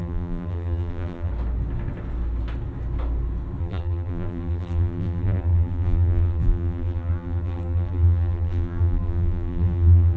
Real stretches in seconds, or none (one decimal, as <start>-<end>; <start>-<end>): 1.3-3.6